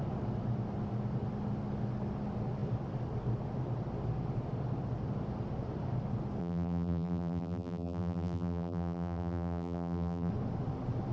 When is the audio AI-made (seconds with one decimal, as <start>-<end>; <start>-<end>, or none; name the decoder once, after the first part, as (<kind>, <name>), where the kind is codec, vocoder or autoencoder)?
6.4-10.3 (vocoder, BigVGAN v2)